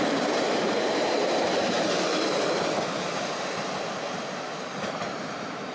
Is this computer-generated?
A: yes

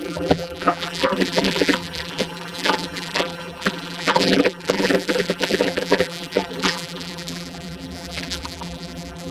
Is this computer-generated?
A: yes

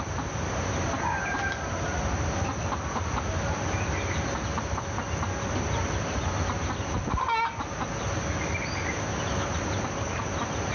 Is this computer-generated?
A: no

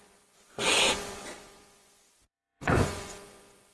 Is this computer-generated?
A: yes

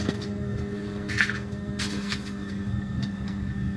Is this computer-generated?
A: yes